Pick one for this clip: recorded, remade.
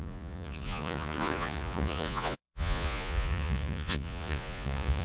remade